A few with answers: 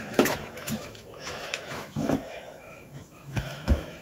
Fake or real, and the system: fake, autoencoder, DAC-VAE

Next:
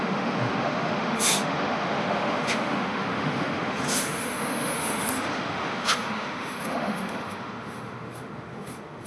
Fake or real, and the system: fake, autoencoder, DAC-VAE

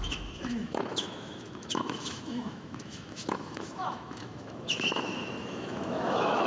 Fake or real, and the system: fake, autoencoder, DAC-VAE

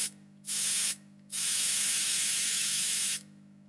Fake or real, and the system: fake, autoencoder, DAC-VAE